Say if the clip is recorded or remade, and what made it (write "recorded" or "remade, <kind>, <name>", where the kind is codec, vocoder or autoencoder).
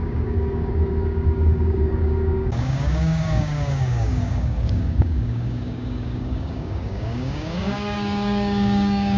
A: remade, codec, DAC